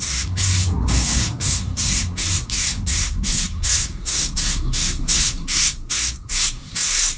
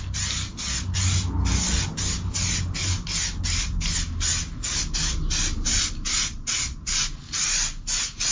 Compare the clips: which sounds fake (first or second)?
first